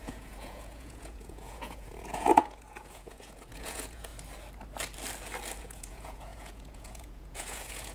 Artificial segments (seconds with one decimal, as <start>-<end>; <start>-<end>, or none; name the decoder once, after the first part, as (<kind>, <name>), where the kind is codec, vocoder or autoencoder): 0.0-4.1 (vocoder, Vocos); 5.6-7.9